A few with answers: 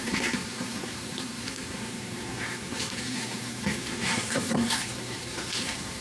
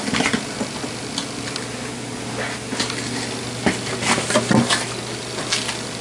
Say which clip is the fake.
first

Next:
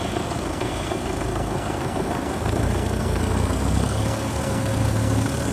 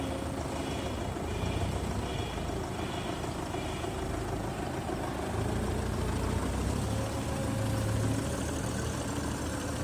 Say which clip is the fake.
first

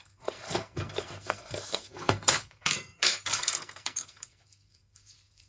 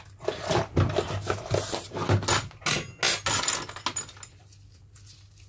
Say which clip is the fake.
first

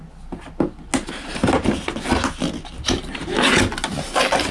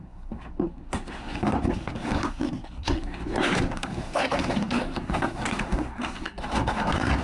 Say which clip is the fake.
second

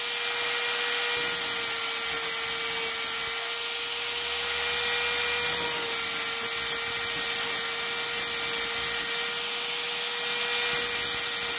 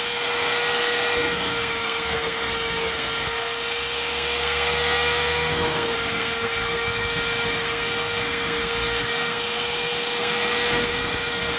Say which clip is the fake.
second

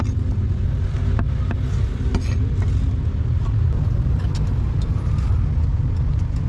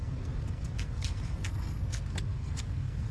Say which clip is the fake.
second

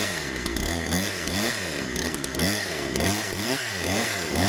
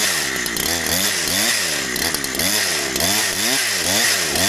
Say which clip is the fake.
first